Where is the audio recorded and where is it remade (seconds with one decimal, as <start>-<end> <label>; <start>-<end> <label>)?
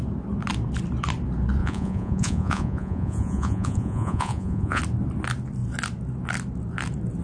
0.0-1.6 recorded; 1.6-4.8 remade; 4.8-7.2 recorded